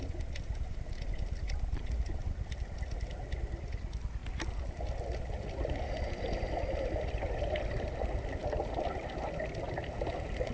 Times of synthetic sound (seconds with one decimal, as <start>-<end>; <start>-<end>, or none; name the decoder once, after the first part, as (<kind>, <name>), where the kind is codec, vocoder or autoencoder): none